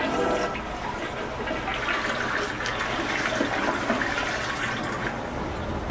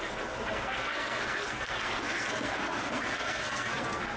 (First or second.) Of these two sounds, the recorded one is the first